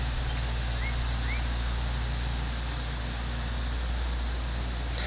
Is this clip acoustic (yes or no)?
yes